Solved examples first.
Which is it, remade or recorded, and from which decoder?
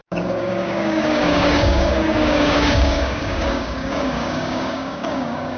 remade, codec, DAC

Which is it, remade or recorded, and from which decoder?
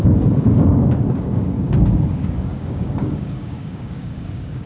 remade, codec, DAC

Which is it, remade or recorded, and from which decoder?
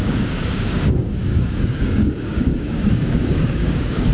remade, codec, DAC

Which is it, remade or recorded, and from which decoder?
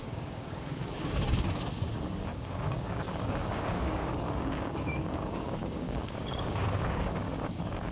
remade, codec, DAC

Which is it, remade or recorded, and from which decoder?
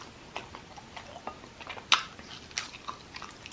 recorded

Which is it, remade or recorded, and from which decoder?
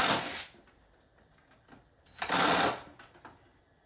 recorded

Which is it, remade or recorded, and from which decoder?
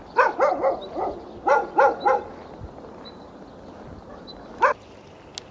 recorded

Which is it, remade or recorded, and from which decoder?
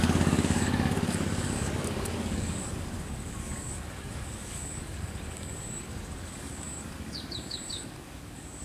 remade, codec, DAC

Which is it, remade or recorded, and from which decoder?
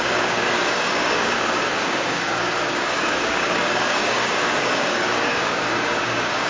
remade, codec, DAC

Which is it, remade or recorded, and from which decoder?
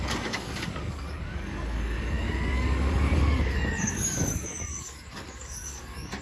remade, codec, DAC